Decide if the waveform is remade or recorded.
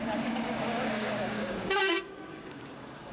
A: remade